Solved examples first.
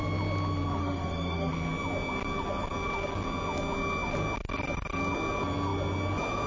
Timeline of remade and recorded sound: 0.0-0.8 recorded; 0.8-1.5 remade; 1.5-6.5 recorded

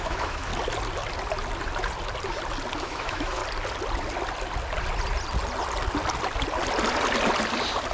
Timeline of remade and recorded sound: 0.0-0.5 remade; 0.5-2.8 recorded; 2.8-3.4 remade; 3.4-7.9 recorded

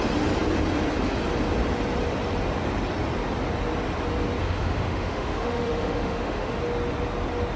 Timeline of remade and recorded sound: 0.0-4.4 recorded; 4.4-6.6 remade; 6.6-7.6 recorded